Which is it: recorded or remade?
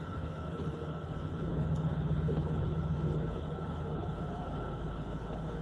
remade